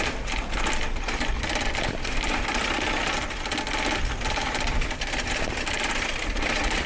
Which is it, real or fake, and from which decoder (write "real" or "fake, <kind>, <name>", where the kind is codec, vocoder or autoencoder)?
real